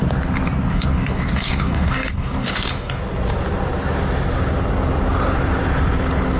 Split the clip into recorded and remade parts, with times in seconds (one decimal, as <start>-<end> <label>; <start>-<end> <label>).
0.0-0.7 recorded; 0.7-3.0 remade; 3.0-6.4 recorded